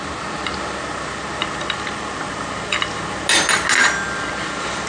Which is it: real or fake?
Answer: real